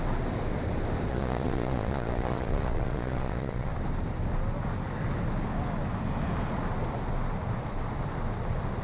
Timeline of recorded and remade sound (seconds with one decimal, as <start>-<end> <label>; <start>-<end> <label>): 0.0-1.1 recorded; 1.1-3.7 remade; 3.7-8.8 recorded